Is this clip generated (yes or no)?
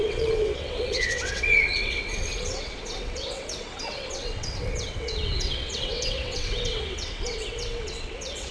yes